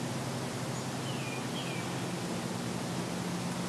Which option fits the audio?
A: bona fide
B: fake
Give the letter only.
A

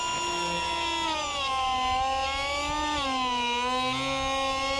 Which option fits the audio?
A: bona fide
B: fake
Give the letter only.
A